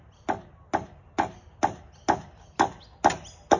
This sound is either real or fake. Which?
real